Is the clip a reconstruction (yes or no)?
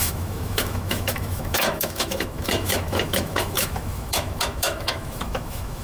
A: yes